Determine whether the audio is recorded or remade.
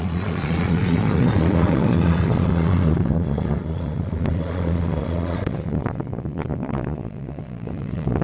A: remade